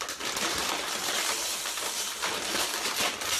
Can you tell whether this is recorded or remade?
recorded